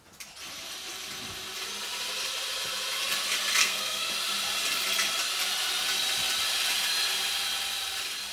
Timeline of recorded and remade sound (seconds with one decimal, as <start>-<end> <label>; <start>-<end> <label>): 0.0-3.6 recorded; 3.6-4.1 remade; 4.1-8.3 recorded